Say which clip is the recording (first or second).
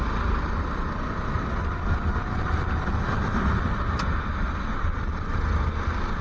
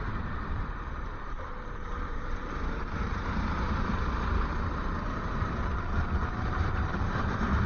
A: first